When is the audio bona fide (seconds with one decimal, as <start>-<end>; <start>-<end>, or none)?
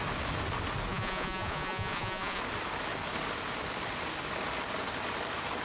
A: 0.0-0.9; 2.4-5.6